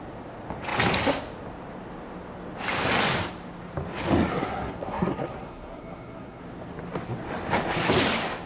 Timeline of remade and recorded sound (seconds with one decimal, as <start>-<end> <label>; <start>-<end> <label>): 0.0-4.3 recorded; 4.3-6.4 remade; 6.4-8.5 recorded